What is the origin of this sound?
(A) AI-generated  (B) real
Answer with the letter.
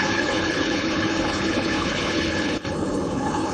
A